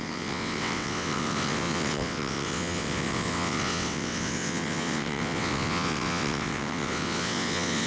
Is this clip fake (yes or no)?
yes